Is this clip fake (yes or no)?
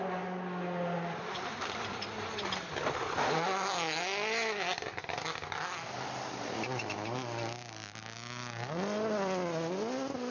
no